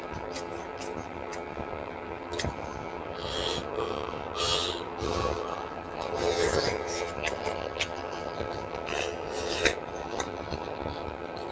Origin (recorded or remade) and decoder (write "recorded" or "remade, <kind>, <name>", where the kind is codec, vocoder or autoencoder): remade, vocoder, HiFi-GAN